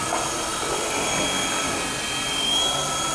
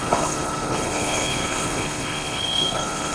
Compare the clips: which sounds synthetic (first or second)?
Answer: second